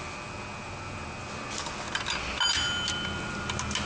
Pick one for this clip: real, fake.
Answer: real